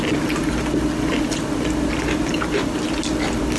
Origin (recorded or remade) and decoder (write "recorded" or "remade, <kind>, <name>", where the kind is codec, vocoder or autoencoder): recorded